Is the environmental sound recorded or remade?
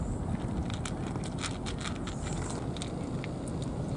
recorded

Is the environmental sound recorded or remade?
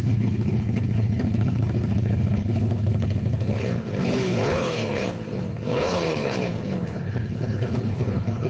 remade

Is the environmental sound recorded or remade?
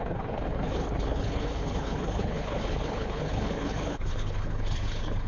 remade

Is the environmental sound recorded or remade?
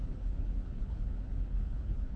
remade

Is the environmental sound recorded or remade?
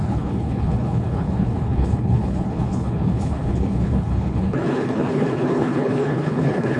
remade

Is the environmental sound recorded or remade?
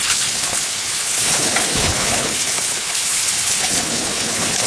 remade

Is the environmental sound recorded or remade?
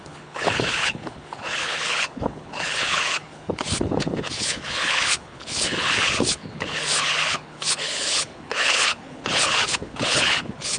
remade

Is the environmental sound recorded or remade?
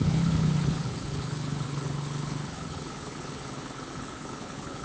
remade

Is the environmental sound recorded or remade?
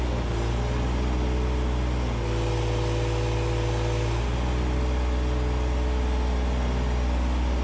recorded